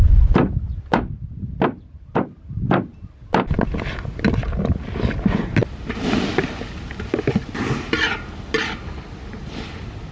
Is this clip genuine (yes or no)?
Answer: yes